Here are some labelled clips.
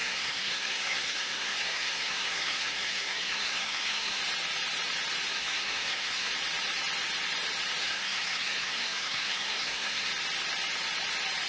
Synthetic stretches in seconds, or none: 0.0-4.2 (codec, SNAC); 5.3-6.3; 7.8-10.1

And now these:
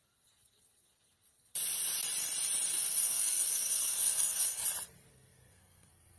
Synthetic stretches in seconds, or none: 2.7-4.6 (codec, SNAC); 5.1-6.2

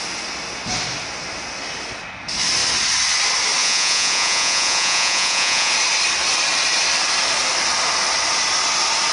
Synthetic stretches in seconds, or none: 3.6-5.7 (vocoder, Vocos)

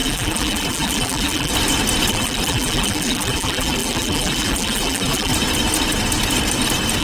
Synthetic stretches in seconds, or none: 0.0-1.5 (vocoder, BigVGAN v2); 2.1-5.3

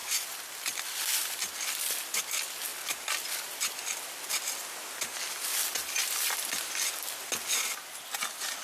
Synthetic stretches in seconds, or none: none

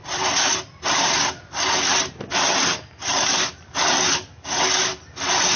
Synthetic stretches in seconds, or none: none

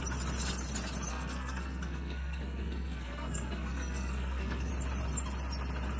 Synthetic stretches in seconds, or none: 1.1-4.7 (codec, SNAC)

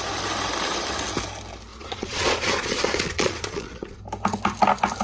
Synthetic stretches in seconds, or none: 1.7-4.0 (vocoder, Vocos)